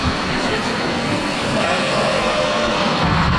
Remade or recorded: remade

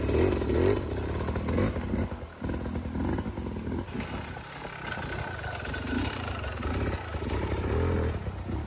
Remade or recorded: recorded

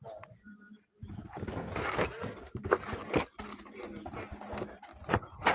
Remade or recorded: recorded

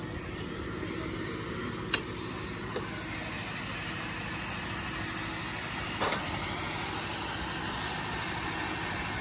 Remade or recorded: recorded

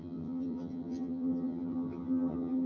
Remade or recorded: remade